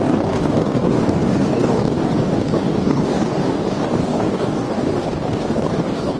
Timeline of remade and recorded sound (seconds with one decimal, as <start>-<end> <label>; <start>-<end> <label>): 0.0-6.2 remade